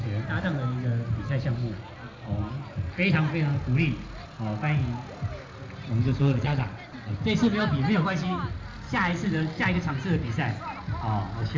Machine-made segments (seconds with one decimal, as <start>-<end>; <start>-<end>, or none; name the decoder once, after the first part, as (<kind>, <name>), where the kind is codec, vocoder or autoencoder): 6.2-7.1 (vocoder, WaveNeXt)